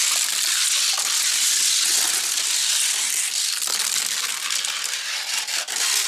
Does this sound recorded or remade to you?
recorded